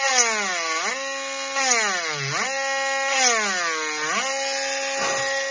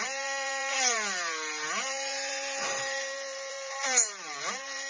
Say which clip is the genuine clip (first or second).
first